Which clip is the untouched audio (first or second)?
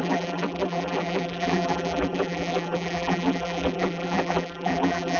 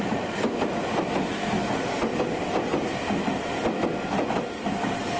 second